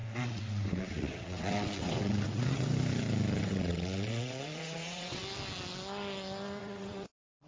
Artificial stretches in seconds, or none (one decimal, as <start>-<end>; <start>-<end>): 0.0-2.7; 3.4-5.2; 6.6-7.5